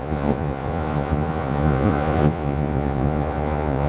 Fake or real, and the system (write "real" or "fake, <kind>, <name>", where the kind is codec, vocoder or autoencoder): fake, vocoder, Vocos